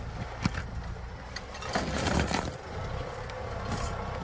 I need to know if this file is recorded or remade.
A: recorded